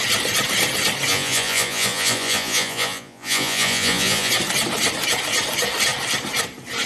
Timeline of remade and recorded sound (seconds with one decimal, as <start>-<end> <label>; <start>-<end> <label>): 0.0-1.1 recorded; 1.1-4.3 remade; 4.3-6.9 recorded

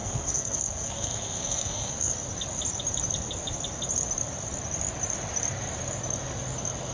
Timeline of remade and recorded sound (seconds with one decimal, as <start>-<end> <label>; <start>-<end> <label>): 0.0-2.1 remade; 2.1-6.9 recorded

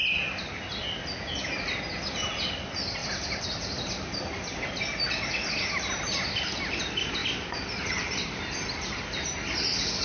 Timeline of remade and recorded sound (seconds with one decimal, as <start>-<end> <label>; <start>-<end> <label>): 0.0-10.0 recorded

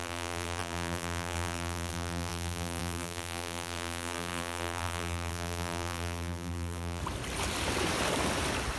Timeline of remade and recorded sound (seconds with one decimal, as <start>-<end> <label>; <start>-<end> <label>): 0.0-7.0 remade; 7.0-8.8 recorded

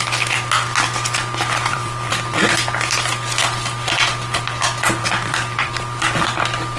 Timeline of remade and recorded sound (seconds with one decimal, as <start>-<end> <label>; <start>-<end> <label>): 0.0-1.7 recorded; 1.7-2.5 remade; 2.5-5.0 recorded; 5.0-5.7 remade; 5.7-6.8 recorded